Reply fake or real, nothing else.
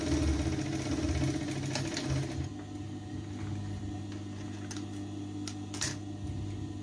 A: real